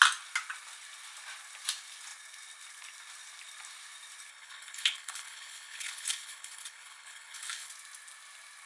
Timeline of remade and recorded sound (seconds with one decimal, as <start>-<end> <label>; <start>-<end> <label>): 0.0-4.3 recorded; 4.3-7.7 remade; 7.7-8.7 recorded